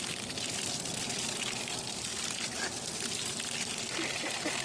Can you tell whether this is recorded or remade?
recorded